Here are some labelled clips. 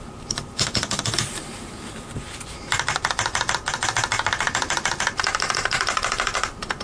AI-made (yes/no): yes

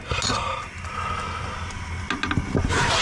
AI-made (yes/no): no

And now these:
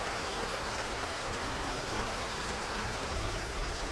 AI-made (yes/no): yes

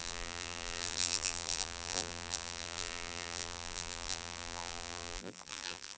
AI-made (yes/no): yes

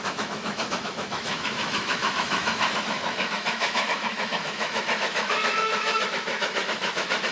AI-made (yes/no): yes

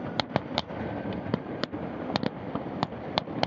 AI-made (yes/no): yes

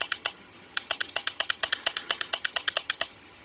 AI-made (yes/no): yes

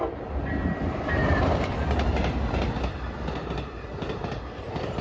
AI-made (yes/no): no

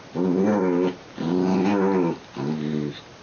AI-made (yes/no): no